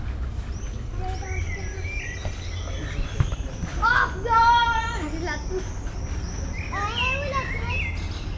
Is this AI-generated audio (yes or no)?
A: no